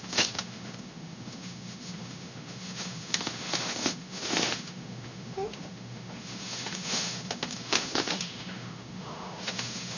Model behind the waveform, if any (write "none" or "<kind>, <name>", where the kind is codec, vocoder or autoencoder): autoencoder, DAC-VAE